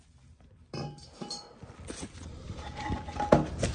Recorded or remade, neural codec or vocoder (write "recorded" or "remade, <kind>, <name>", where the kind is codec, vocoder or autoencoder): recorded